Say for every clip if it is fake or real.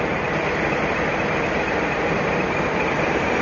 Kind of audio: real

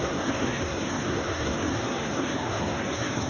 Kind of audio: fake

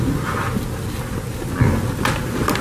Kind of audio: real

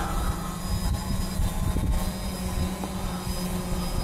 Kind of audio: real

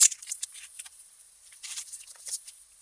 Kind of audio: fake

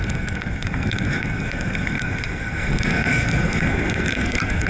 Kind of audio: fake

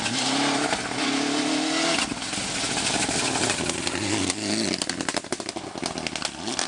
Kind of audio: real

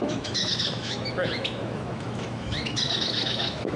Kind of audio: fake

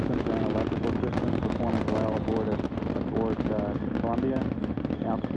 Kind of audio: real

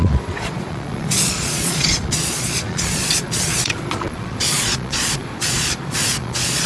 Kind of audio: fake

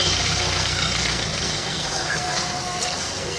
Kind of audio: fake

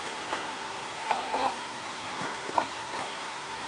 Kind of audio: fake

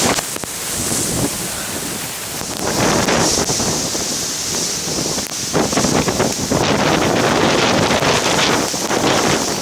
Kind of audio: real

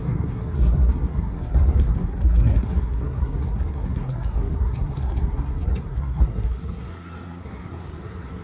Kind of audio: fake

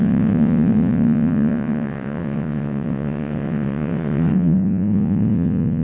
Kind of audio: fake